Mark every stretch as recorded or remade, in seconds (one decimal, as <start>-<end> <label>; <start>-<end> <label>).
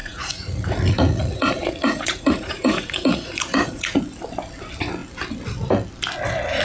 0.0-4.0 remade; 4.0-6.6 recorded